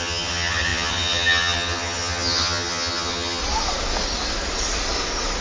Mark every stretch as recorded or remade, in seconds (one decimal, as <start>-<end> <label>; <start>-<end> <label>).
0.0-3.4 remade; 3.4-5.4 recorded